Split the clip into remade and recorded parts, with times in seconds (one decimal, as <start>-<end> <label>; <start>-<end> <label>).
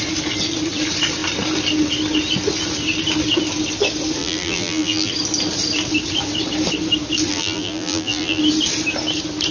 0.0-4.2 recorded; 4.2-5.1 remade; 5.1-7.3 recorded; 7.3-8.4 remade; 8.4-9.5 recorded